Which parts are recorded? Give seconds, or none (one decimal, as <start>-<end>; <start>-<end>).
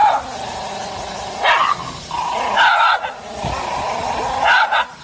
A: 0.0-5.0